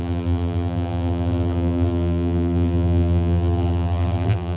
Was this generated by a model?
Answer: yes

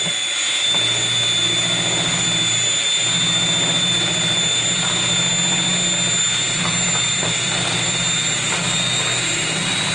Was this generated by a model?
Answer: no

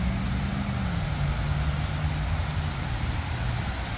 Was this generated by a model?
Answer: no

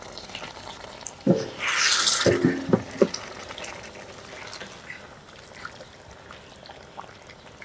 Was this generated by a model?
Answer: no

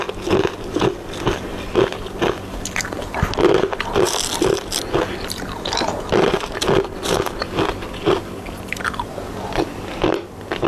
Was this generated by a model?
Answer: no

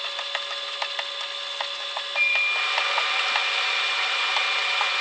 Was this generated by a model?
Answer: no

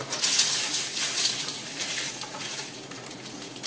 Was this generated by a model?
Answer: yes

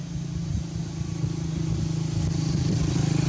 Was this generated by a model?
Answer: no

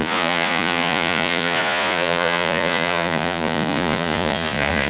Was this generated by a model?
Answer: yes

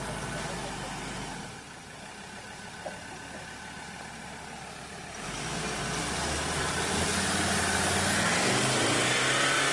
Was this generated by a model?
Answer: no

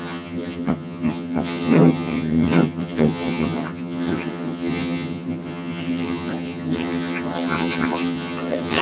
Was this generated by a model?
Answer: yes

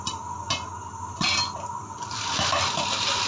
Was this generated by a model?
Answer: no